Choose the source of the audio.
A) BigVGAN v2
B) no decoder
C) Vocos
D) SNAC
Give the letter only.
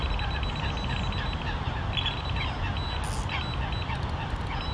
B